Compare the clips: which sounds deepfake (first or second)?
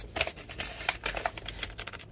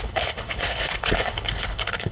second